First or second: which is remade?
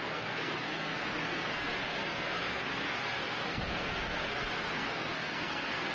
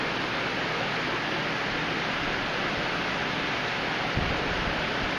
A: first